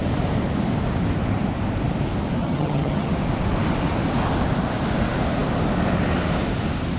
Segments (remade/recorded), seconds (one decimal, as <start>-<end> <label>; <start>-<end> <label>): 0.0-2.4 recorded; 2.4-3.1 remade; 3.1-7.0 recorded